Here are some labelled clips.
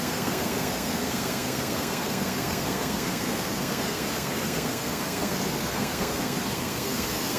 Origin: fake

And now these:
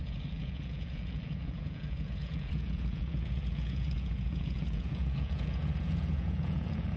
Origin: fake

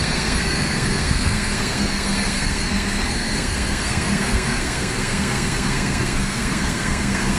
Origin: fake